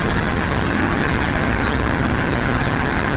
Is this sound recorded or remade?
remade